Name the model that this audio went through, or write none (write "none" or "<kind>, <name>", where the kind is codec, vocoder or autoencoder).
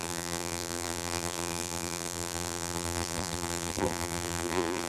vocoder, BigVGAN v2